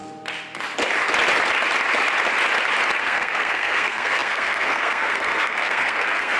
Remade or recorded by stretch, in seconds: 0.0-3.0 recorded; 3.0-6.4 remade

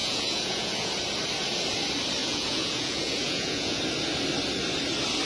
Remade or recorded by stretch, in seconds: 0.0-0.9 remade; 0.9-2.2 recorded; 2.2-3.8 remade; 3.8-5.2 recorded

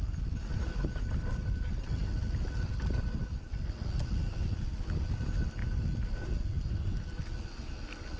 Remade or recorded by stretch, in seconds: 0.0-5.6 recorded; 5.6-6.3 remade; 6.3-8.2 recorded

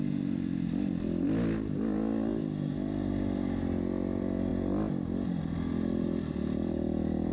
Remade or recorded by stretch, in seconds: 0.0-7.3 recorded

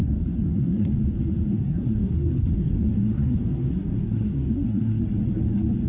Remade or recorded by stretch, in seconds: 0.0-0.9 remade; 0.9-1.5 recorded; 1.5-5.0 remade; 5.0-5.9 recorded

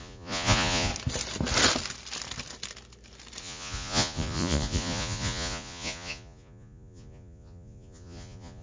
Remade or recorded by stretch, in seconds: 0.0-0.9 remade; 0.9-3.4 recorded; 3.4-8.6 remade

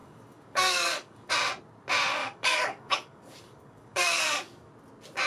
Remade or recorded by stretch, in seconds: 0.0-1.3 remade; 1.3-2.2 recorded; 2.2-4.7 remade; 4.7-5.3 recorded